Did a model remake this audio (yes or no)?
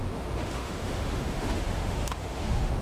yes